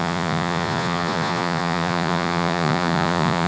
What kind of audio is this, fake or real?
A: fake